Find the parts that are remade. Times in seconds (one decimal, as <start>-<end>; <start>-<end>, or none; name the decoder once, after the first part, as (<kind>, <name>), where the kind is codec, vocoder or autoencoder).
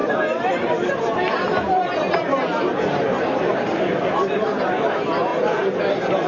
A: none